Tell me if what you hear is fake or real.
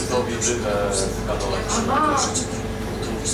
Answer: real